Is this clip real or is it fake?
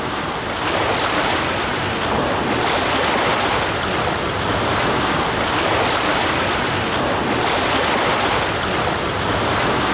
real